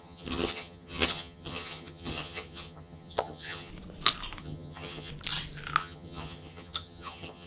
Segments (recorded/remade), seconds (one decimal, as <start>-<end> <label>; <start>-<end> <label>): 0.0-3.7 remade; 3.7-4.4 recorded; 4.4-5.1 remade; 5.1-5.8 recorded; 5.8-7.5 remade